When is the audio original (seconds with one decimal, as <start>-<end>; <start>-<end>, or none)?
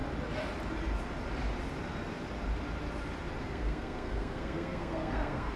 0.0-3.4